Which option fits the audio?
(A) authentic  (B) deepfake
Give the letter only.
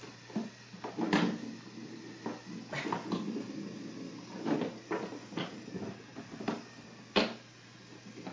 A